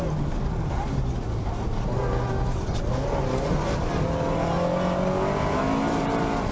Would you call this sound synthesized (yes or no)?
no